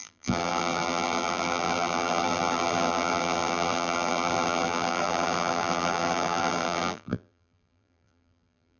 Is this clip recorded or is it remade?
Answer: remade